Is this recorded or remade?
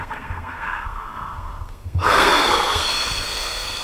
remade